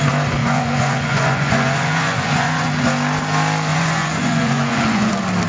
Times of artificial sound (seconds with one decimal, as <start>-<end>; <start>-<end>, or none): 0.4-2.7; 3.7-5.1